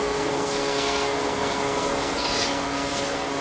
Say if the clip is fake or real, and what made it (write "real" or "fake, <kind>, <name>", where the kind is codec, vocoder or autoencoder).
fake, codec, SNAC